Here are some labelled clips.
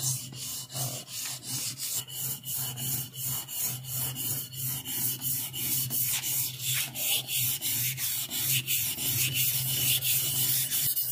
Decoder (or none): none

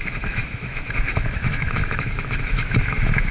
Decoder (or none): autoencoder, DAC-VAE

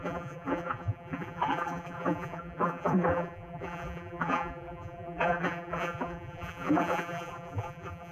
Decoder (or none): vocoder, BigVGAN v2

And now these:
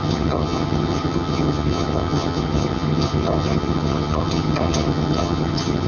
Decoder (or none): vocoder, HiFi-GAN